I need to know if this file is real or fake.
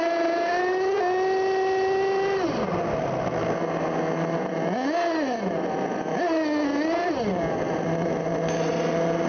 real